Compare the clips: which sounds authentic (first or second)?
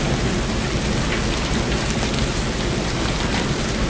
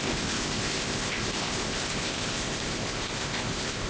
first